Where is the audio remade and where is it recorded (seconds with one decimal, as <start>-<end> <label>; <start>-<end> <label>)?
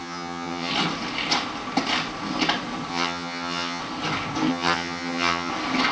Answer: 0.0-0.7 remade; 0.7-2.9 recorded; 2.9-3.8 remade; 3.8-4.5 recorded; 4.5-5.5 remade; 5.5-5.9 recorded